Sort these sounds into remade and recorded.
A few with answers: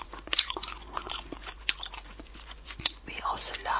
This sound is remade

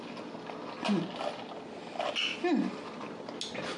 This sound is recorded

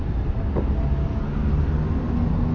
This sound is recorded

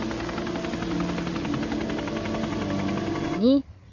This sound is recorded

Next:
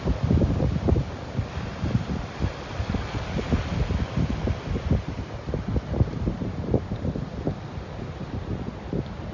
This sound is recorded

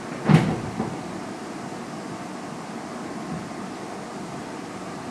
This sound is recorded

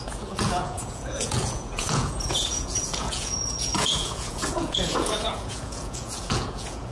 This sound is remade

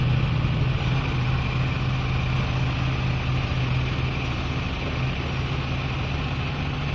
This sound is recorded